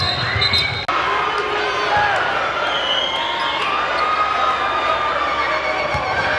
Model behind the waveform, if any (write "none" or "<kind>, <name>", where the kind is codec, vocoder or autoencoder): none